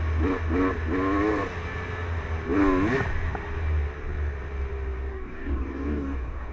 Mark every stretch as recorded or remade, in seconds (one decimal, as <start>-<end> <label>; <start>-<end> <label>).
0.0-5.1 recorded; 5.1-6.5 remade